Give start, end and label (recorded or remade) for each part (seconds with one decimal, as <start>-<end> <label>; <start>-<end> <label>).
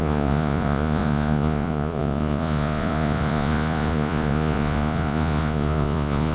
0.0-6.3 remade